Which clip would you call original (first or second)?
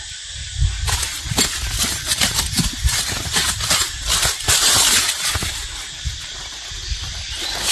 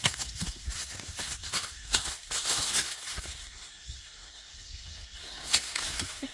first